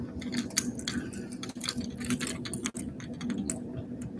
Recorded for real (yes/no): yes